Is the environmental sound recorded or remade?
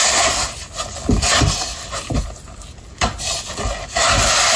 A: recorded